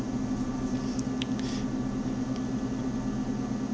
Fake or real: real